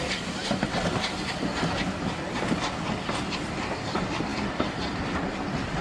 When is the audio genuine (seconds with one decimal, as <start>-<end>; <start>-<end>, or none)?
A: 0.0-5.8